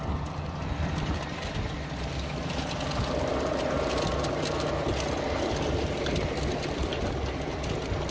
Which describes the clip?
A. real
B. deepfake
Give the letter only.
A